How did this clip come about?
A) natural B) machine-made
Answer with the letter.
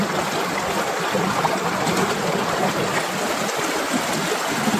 A